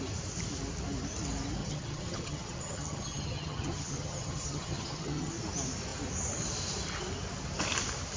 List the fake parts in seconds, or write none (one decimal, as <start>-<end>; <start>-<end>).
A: 1.6-5.3